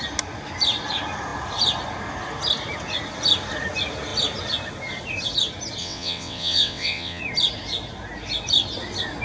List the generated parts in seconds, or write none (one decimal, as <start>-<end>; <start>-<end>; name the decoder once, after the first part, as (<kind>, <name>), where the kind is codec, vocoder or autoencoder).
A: 5.8-7.2 (vocoder, WaveNeXt)